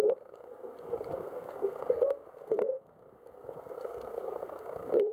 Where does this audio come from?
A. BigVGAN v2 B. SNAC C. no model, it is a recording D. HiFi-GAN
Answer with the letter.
B